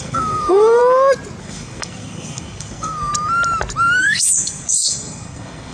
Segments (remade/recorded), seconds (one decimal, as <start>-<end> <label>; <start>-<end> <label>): 0.0-0.8 remade; 0.8-1.4 recorded; 1.4-3.1 remade; 3.1-4.0 recorded; 4.0-5.7 remade